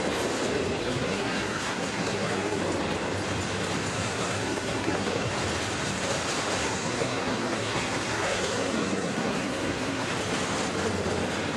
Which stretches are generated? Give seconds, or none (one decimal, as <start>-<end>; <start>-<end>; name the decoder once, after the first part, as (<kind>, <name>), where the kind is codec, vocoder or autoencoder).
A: 0.8-2.6 (codec, SNAC); 3.9-5.3; 6.6-10.1